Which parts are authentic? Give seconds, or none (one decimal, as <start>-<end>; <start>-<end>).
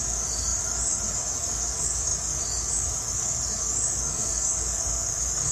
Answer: none